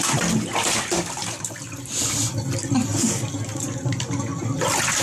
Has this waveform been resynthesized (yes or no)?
no